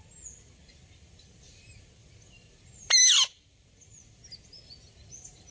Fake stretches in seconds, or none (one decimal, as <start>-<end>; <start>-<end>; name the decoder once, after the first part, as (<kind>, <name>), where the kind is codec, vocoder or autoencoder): none